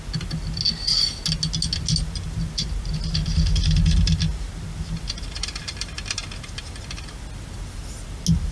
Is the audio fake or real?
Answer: real